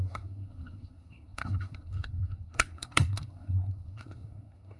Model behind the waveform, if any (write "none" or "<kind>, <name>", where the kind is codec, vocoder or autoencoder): codec, SNAC